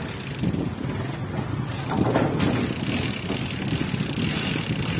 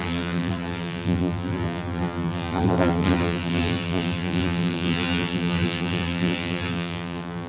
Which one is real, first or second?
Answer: first